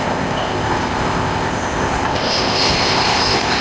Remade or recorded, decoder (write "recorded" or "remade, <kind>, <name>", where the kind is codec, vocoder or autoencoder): remade, codec, ZipCodec